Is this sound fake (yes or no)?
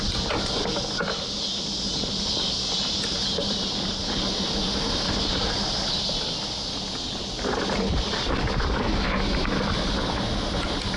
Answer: no